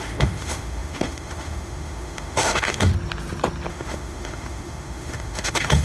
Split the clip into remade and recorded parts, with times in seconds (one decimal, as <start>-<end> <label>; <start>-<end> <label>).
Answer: 0.0-2.9 remade; 2.9-3.7 recorded; 3.7-5.8 remade